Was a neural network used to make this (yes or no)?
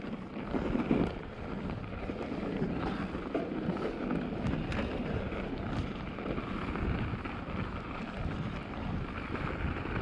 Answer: no